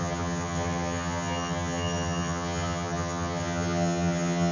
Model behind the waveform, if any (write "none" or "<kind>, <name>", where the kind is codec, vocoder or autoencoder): vocoder, HiFi-GAN